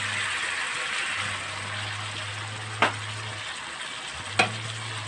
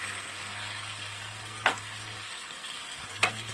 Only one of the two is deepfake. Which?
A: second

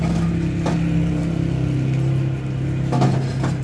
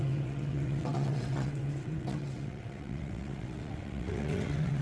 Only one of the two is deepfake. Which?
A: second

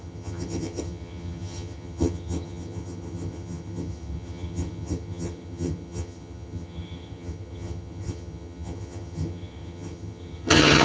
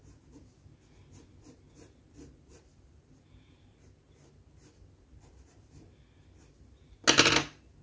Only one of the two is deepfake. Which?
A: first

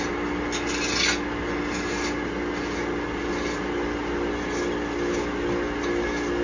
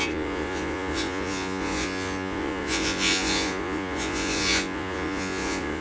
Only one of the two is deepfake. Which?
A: second